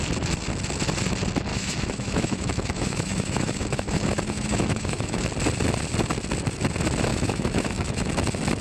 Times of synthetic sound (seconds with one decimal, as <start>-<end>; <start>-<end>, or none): 1.5-5.2; 7.1-8.1